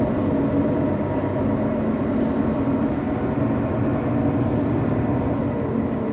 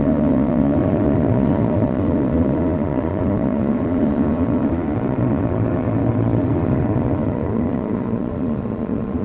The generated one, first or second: second